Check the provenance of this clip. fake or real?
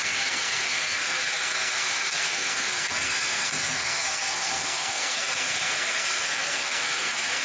fake